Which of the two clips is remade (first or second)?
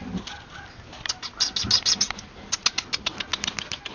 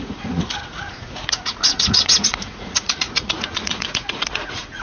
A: second